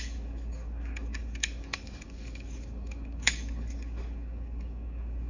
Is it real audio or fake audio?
fake